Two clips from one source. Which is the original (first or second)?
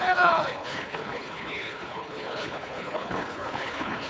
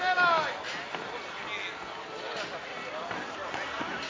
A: second